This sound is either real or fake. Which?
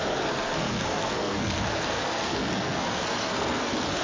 fake